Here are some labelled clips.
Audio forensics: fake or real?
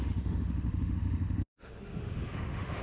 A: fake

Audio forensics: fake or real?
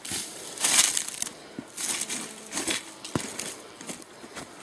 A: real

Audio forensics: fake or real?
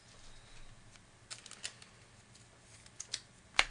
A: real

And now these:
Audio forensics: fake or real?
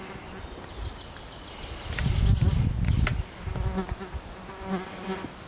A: real